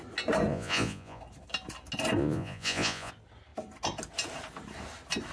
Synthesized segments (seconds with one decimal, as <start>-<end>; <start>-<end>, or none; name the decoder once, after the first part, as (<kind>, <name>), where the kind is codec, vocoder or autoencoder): 0.5-1.2 (vocoder, Vocos); 2.2-3.1